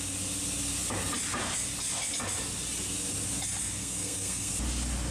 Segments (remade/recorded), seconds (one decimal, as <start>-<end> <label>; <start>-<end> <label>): 0.0-3.8 recorded; 3.8-4.5 remade; 4.5-5.1 recorded